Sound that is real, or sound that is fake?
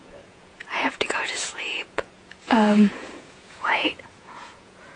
fake